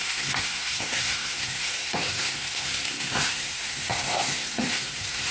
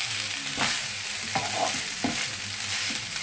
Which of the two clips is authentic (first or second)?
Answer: second